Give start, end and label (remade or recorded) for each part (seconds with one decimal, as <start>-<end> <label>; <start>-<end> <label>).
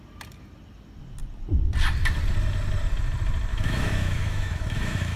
0.0-3.5 recorded; 3.5-5.2 remade